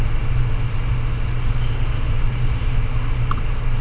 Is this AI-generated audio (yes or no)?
no